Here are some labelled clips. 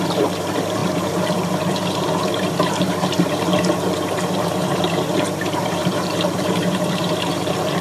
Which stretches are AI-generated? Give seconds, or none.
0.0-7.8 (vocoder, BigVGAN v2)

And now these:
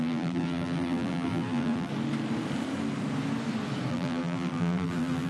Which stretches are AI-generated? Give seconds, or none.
0.0-1.9 (vocoder, BigVGAN v2); 3.9-5.3

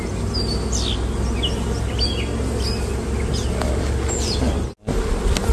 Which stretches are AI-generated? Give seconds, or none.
none